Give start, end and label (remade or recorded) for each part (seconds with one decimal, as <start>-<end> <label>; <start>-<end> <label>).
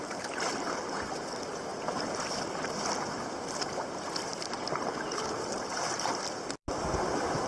0.0-1.7 recorded; 1.7-2.4 remade; 2.4-7.5 recorded